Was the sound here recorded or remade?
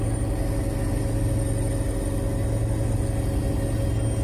recorded